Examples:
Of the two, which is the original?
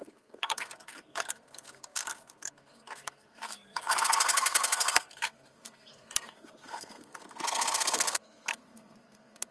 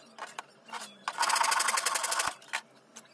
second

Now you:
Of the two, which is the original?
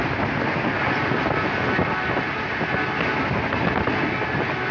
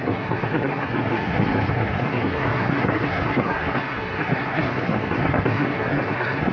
first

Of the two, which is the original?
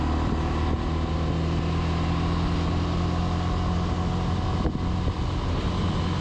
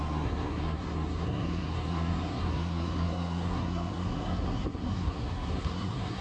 first